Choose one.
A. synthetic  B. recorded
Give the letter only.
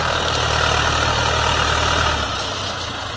B